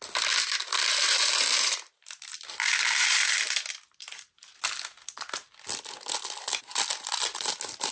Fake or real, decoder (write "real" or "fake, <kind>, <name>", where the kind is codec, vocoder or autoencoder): real